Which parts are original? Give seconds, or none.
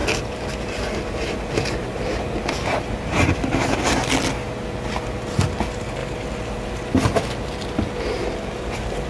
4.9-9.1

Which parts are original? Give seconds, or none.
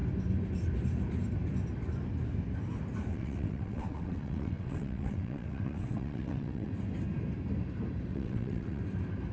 0.0-3.1; 6.7-8.1; 8.8-9.3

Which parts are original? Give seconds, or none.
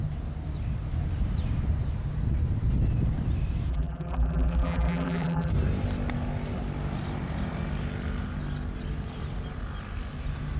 0.0-3.7; 5.5-10.6